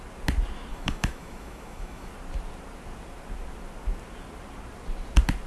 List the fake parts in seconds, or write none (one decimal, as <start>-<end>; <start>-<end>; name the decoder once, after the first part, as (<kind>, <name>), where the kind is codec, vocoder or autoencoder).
0.7-2.1 (autoencoder, DAC-VAE)